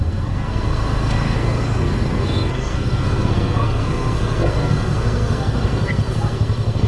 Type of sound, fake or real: fake